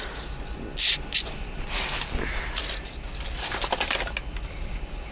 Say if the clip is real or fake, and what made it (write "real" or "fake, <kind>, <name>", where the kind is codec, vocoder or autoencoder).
real